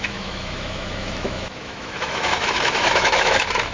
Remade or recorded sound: remade